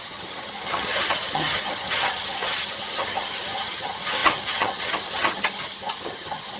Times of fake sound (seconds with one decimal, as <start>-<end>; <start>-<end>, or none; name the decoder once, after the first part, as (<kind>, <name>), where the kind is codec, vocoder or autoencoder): 0.0-6.6 (vocoder, HiFi-GAN)